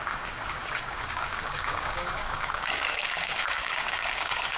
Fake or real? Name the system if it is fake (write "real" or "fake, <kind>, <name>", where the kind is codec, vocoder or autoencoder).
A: fake, codec, DAC